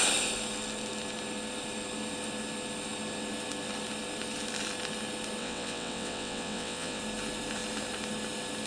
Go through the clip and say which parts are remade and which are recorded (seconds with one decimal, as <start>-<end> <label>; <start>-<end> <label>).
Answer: 0.0-5.4 recorded; 5.4-7.0 remade; 7.0-8.7 recorded